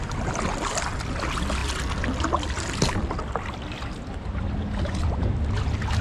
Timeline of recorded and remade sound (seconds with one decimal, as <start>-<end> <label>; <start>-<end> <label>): 0.0-6.0 recorded